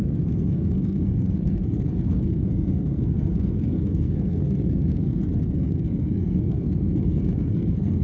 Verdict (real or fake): fake